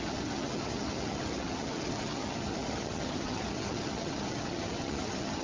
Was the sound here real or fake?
fake